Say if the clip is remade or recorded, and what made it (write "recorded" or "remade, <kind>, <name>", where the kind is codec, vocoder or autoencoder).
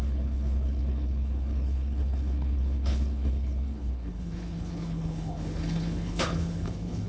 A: remade, codec, HILCodec